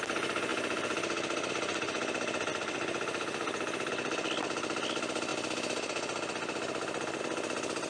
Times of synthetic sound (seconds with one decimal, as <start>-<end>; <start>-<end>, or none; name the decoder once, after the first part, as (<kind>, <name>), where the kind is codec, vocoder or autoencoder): 0.5-1.5 (vocoder, BigVGAN v2); 2.5-3.9